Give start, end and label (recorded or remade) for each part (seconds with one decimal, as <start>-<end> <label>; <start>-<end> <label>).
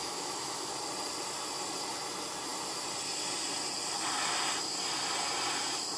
0.0-0.7 remade; 0.7-6.0 recorded